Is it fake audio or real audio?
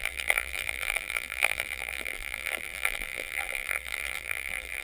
fake